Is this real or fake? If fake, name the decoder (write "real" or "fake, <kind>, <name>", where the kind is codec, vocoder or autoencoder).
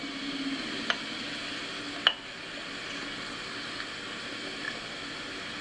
real